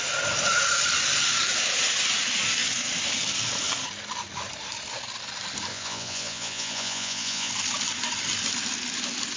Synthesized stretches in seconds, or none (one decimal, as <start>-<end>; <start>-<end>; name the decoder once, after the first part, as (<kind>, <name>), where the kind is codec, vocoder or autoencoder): 5.7-7.5 (vocoder, Vocos)